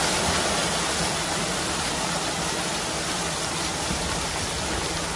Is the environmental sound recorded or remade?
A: recorded